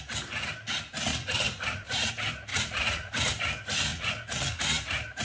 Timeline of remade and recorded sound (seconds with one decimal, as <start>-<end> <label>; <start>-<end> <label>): 0.0-1.1 recorded; 1.1-2.1 remade; 2.1-2.5 recorded; 2.5-3.3 remade; 3.3-3.9 recorded; 3.9-4.6 remade; 4.6-5.2 recorded